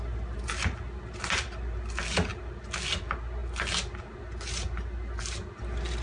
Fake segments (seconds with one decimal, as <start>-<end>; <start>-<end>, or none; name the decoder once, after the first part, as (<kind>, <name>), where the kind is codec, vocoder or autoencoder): none